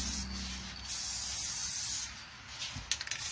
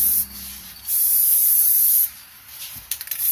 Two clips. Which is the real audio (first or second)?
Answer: first